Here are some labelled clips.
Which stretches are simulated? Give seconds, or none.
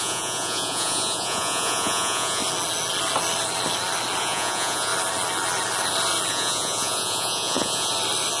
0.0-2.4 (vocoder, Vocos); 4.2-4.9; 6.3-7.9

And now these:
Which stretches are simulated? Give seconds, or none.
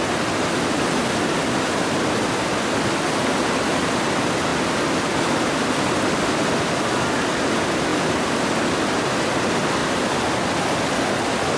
none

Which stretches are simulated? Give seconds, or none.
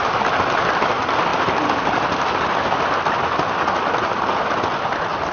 none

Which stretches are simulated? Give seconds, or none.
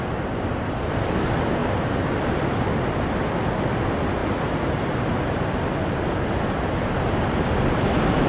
none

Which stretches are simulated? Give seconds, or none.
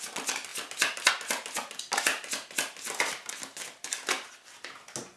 none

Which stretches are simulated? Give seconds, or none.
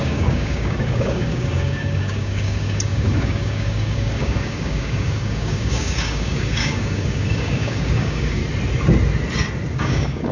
0.0-8.4 (codec, DAC); 9.7-10.3